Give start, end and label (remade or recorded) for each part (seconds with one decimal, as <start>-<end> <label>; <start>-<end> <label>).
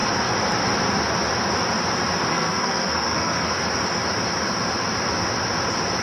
0.0-2.3 recorded; 2.3-3.5 remade; 3.5-6.0 recorded